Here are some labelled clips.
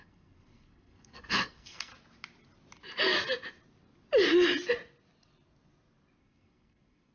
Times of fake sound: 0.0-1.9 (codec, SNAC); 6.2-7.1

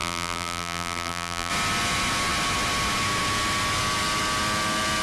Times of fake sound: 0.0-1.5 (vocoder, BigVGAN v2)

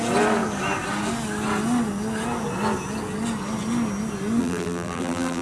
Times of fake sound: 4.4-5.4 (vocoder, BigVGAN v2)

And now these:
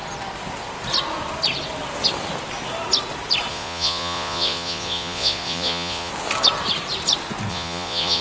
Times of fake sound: 3.5-6.1 (vocoder, Vocos); 7.5-8.2

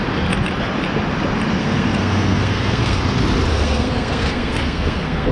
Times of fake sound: 1.6-3.0 (codec, SNAC); 3.5-5.3

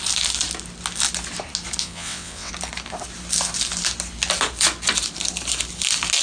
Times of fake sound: 1.8-2.5 (vocoder, WaveNeXt)